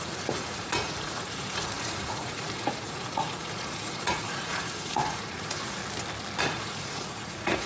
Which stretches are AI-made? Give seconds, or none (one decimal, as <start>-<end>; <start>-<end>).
0.0-5.8; 6.4-7.7